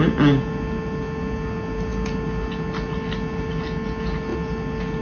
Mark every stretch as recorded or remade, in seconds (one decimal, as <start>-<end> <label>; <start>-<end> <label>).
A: 0.0-5.0 recorded